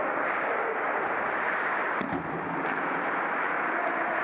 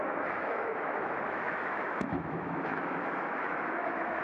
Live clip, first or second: first